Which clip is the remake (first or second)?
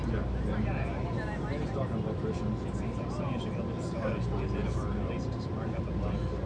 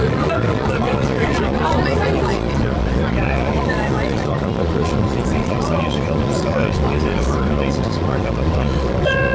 second